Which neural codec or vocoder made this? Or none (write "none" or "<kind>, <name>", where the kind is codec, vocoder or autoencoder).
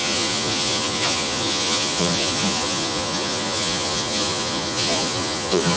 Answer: vocoder, Vocos